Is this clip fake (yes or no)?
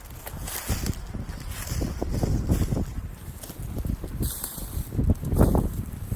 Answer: no